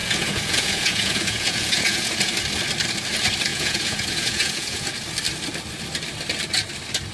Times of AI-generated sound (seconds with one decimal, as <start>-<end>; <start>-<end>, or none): 0.0-2.3; 3.5-4.9